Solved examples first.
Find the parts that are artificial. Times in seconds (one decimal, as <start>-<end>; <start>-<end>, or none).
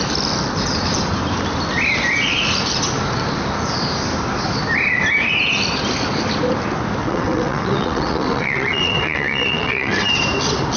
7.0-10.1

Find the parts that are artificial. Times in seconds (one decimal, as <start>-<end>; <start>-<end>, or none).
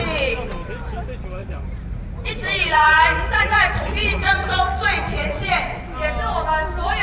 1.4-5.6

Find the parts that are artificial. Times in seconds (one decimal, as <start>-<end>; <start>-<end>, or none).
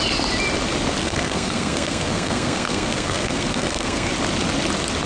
1.0-4.1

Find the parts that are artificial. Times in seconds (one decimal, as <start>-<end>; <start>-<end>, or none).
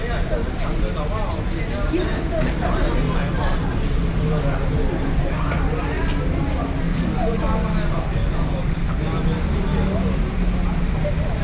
6.9-7.4; 8.2-9.0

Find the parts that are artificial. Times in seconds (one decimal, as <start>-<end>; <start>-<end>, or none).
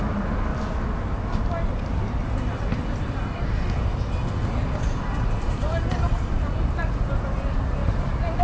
0.0-0.5; 5.2-8.4